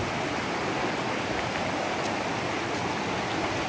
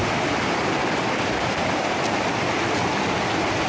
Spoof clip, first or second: second